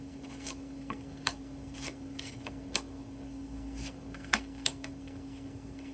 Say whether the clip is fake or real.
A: fake